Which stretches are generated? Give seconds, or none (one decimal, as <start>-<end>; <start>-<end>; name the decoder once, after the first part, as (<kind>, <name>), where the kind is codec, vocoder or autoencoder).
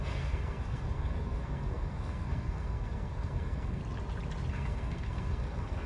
0.0-3.8 (codec, SNAC); 4.5-5.9